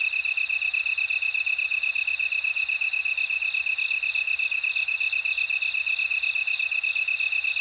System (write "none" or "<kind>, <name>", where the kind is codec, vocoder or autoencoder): none